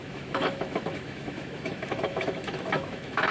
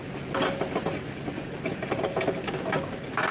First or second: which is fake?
first